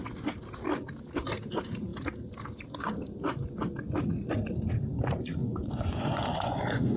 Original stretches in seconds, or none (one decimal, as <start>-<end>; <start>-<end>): 0.0-5.4

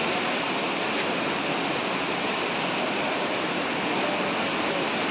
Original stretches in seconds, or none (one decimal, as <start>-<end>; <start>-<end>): 0.0-5.1

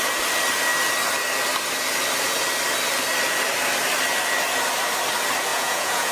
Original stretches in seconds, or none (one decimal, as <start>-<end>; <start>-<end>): 0.0-5.5

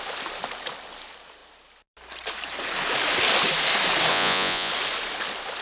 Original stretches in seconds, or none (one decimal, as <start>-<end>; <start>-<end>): 0.0-4.1; 4.7-5.6